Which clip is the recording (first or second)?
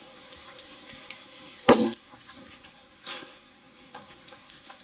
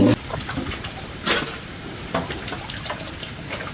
second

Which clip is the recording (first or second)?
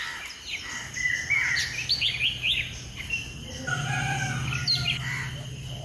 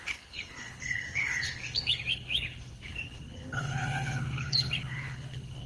first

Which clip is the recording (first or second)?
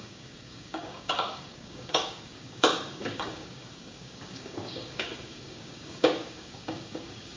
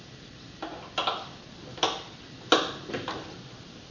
second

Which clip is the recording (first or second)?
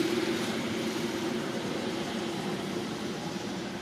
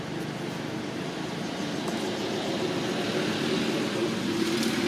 second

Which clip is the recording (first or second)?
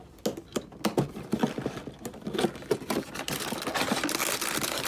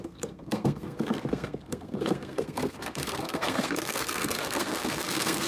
first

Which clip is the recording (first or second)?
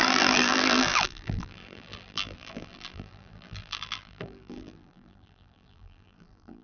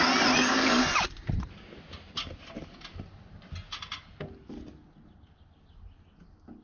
second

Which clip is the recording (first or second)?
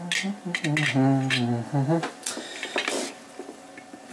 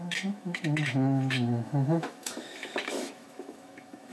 first